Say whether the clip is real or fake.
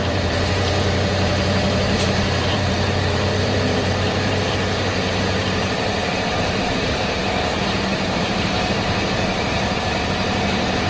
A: fake